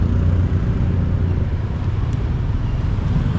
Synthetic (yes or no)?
no